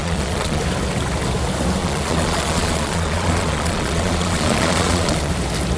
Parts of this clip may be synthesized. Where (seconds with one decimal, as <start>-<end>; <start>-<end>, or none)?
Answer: 0.0-0.6; 1.8-5.3